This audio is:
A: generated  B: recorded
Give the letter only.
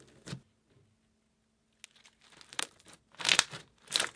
B